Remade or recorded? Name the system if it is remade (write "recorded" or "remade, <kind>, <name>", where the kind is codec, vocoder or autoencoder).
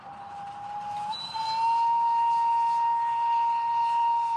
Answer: recorded